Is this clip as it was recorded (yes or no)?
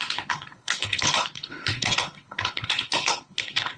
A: no